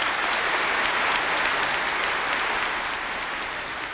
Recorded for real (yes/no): yes